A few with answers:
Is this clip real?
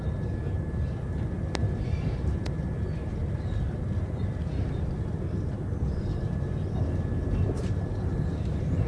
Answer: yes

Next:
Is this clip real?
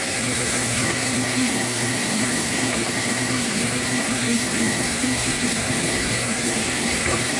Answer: no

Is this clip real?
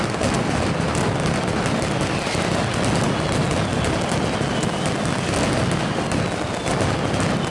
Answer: yes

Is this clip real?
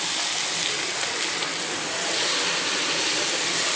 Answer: yes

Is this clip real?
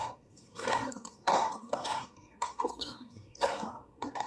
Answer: no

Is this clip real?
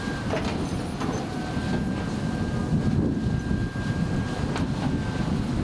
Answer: yes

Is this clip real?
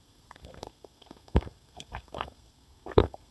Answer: no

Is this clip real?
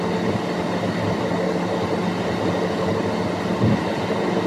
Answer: yes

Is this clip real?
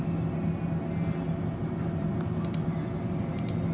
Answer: yes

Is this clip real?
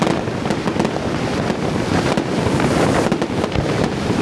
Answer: yes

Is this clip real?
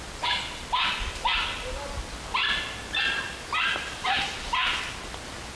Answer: yes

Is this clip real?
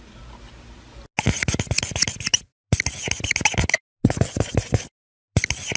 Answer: yes